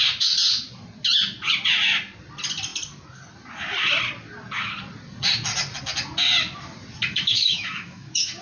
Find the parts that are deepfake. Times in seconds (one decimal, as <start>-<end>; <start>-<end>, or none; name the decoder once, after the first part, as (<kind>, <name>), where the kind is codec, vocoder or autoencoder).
7.1-8.4 (autoencoder, DAC-VAE)